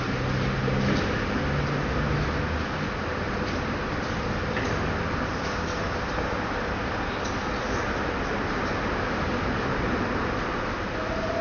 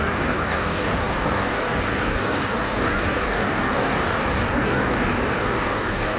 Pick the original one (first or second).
first